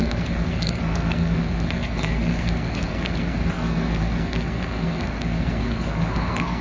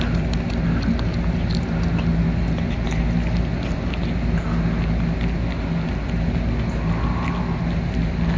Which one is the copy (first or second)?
first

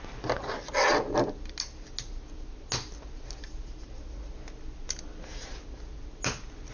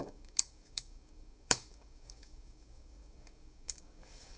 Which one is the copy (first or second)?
second